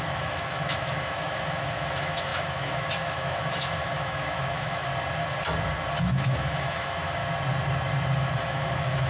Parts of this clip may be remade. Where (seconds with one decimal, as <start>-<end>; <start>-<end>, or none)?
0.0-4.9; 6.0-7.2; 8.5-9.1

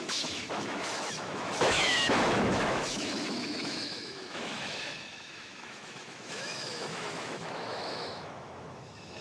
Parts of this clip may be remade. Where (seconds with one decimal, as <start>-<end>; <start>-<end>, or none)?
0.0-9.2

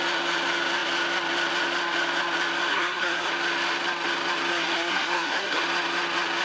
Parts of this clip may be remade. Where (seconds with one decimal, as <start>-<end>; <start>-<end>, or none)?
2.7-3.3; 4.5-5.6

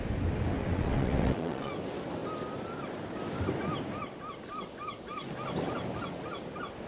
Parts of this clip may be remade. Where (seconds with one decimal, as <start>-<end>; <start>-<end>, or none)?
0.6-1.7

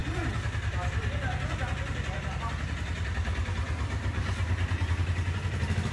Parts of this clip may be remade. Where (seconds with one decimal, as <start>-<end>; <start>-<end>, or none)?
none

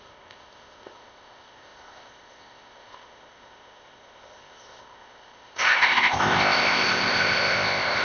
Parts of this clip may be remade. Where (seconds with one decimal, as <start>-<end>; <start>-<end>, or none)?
0.0-8.0